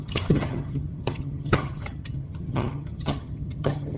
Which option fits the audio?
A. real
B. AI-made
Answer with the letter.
B